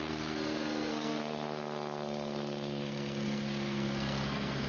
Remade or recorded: remade